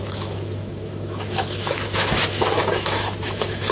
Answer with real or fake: fake